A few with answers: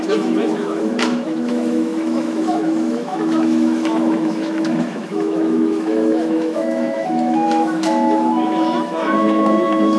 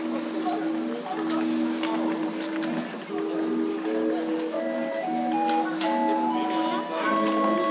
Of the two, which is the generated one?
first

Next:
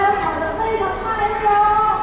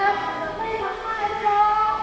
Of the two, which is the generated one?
second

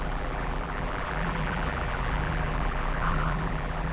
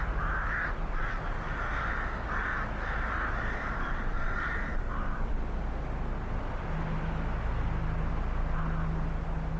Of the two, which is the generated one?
first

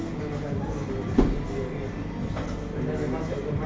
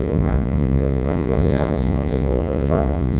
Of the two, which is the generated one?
second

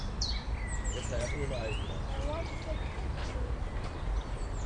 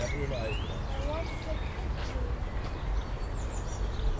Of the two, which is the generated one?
first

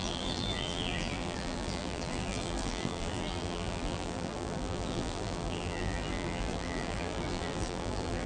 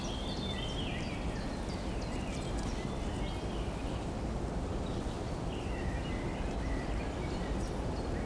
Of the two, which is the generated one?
first